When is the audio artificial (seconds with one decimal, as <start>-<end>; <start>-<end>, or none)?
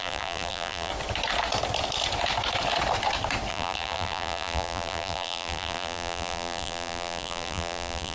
0.0-0.9; 3.5-8.1